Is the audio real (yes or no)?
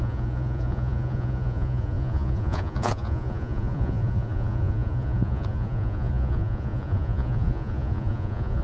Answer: no